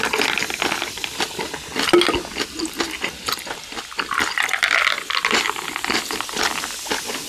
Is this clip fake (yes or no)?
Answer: no